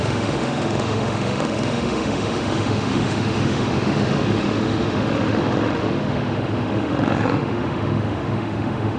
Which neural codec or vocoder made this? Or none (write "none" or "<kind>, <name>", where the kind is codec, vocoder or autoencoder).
autoencoder, DAC-VAE